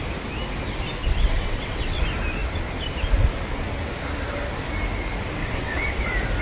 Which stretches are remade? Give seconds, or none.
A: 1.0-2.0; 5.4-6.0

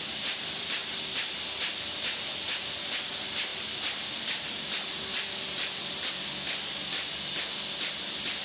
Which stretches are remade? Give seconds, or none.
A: 0.0-0.8; 2.2-8.4

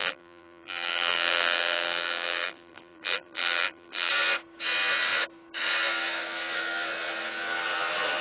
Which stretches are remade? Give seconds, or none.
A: 0.0-4.1

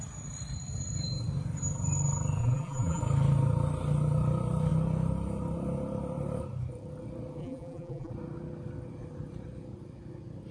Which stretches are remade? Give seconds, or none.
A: 2.4-3.0; 7.4-8.1